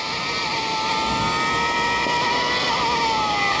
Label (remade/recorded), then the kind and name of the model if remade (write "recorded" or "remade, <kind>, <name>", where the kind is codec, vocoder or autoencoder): recorded